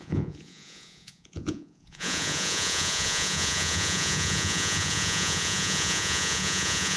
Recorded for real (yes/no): no